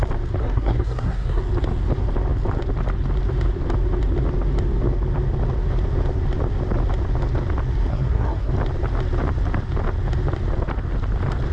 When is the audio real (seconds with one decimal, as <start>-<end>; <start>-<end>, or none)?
0.0-0.4; 1.4-7.9; 8.5-11.5